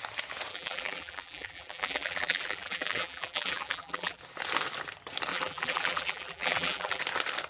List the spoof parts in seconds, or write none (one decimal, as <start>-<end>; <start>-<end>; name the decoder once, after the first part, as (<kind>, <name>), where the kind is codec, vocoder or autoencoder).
0.5-4.2 (vocoder, BigVGAN v2); 5.3-7.0